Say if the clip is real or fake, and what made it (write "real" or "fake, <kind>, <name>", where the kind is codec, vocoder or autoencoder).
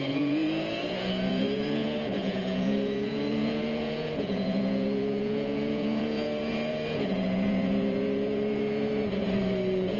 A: fake, vocoder, Vocos